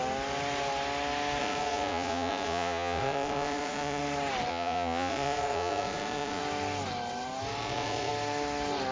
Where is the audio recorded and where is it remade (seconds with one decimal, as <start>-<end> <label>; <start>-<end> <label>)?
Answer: 0.0-1.4 recorded; 1.4-4.0 remade; 4.0-4.5 recorded; 4.5-6.4 remade; 6.4-7.6 recorded; 7.6-8.1 remade; 8.1-8.9 recorded